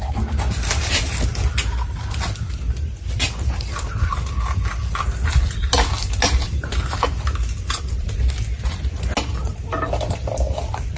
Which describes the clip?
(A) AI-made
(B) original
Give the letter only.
B